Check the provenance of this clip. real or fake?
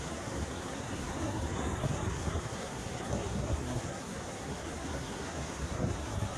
fake